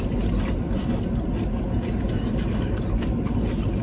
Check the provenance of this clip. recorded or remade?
recorded